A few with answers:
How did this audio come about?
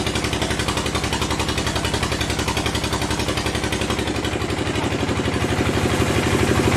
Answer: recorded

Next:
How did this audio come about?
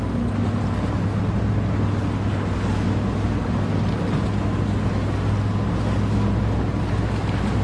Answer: recorded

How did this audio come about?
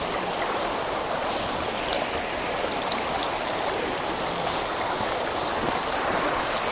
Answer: recorded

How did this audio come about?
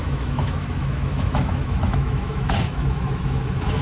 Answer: remade